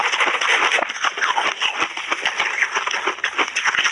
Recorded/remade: recorded